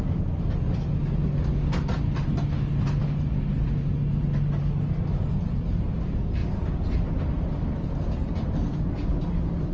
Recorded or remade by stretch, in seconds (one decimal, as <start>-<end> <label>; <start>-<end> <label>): 0.0-9.7 recorded

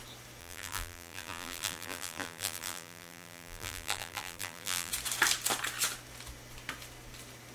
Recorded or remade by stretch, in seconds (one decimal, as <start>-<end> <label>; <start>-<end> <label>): 0.0-0.4 recorded; 0.4-4.9 remade; 4.9-7.5 recorded

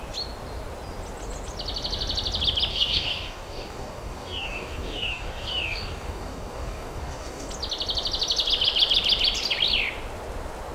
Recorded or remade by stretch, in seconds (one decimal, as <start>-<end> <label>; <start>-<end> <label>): 0.0-2.7 recorded; 2.7-7.5 remade; 7.5-10.7 recorded

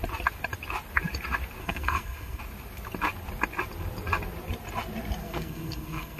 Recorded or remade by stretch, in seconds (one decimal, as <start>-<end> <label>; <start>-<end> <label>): 0.0-1.6 recorded; 1.6-2.4 remade; 2.4-5.2 recorded; 5.2-6.2 remade

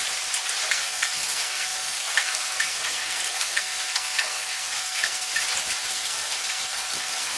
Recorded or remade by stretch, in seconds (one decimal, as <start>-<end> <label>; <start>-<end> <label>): 0.0-0.7 recorded; 0.7-5.3 remade; 5.3-5.9 recorded; 5.9-7.4 remade

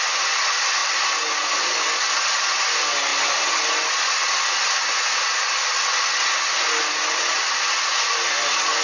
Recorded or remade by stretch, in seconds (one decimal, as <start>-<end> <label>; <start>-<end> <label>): 0.0-3.1 recorded; 3.1-3.6 remade; 3.6-8.8 recorded

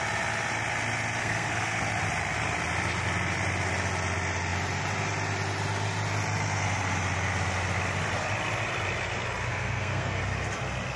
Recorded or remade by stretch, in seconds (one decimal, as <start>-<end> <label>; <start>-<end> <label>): 0.0-1.2 recorded; 1.2-1.8 remade; 1.8-9.5 recorded; 9.5-10.2 remade; 10.2-11.0 recorded

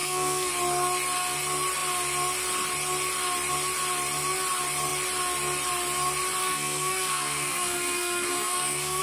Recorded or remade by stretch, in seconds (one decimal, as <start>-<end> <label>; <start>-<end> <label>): 0.0-0.5 remade; 0.5-6.4 recorded; 6.4-9.0 remade